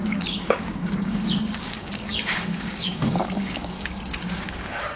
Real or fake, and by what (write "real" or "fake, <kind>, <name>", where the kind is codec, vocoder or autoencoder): fake, codec, DAC